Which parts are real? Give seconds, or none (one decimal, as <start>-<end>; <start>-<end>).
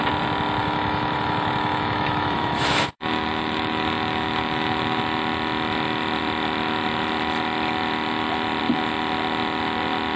0.0-0.6; 5.0-10.2